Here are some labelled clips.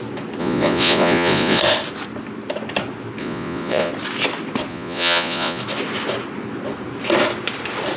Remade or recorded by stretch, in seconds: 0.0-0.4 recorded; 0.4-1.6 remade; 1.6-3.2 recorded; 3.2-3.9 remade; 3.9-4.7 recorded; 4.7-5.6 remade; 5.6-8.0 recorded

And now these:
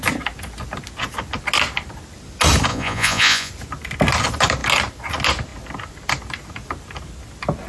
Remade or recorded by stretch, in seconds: 0.0-2.7 recorded; 2.7-3.5 remade; 3.5-7.7 recorded